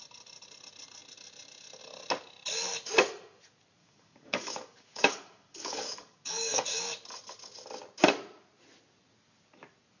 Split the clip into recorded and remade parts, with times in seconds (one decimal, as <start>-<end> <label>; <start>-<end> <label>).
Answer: 0.0-3.8 recorded; 3.8-6.8 remade; 6.8-10.0 recorded